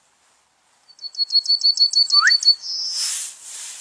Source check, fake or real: real